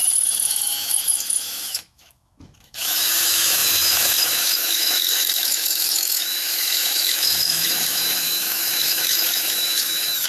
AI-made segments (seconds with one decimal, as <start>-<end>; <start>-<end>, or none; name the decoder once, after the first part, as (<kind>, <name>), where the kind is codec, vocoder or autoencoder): 0.0-10.3 (autoencoder, DAC-VAE)